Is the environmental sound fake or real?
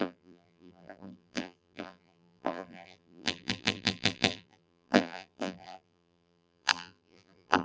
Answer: fake